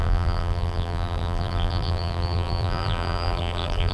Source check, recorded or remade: remade